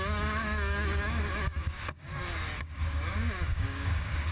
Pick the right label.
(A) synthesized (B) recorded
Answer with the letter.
A